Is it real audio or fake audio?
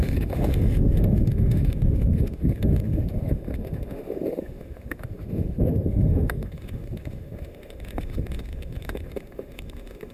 fake